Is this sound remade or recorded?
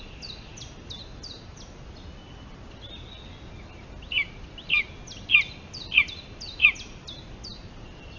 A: recorded